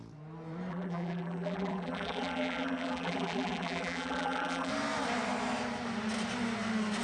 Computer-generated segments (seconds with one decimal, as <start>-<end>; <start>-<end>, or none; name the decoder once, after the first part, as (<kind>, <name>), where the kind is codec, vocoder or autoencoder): 0.7-4.7 (vocoder, BigVGAN v2)